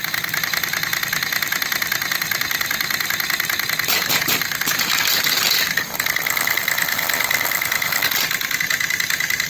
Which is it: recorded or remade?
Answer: recorded